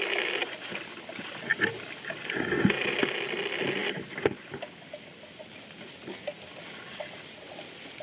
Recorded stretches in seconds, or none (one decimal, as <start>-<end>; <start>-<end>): 0.0-8.0

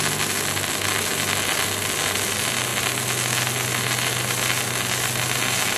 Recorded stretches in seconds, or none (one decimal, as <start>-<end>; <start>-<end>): 0.0-5.8

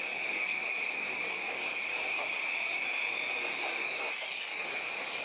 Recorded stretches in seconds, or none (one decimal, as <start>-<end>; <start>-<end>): none

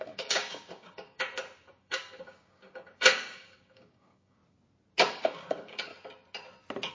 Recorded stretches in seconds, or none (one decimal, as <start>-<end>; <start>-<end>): 1.2-1.7; 4.4-5.1; 5.9-6.9